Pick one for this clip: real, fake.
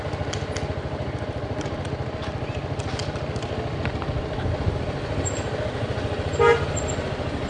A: real